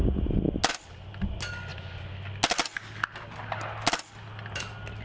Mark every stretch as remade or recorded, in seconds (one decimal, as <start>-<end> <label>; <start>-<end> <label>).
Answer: 0.0-5.0 recorded